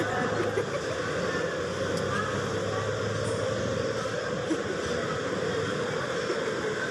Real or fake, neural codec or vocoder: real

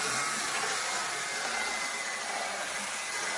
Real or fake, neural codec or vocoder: real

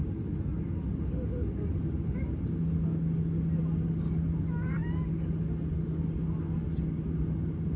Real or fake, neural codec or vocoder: real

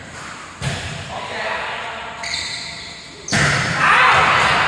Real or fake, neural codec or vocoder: real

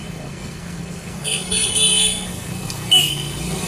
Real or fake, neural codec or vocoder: fake, codec, SNAC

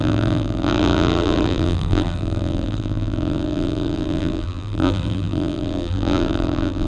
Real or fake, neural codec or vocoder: fake, vocoder, BigVGAN v2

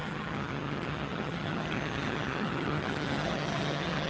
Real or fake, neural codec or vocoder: fake, vocoder, HiFi-GAN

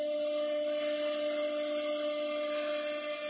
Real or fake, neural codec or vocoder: real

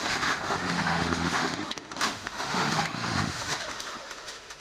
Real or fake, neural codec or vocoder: fake, autoencoder, DAC-VAE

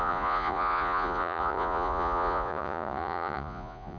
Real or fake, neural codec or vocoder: fake, vocoder, Vocos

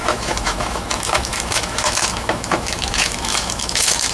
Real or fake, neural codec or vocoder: fake, autoencoder, DAC-VAE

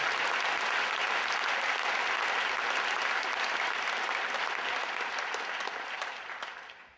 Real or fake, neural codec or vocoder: real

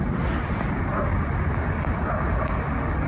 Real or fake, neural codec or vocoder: real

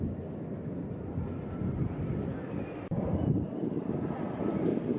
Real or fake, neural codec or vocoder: real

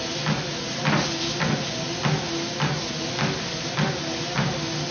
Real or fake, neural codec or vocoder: real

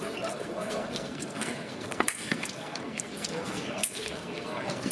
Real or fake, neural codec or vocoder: fake, codec, SNAC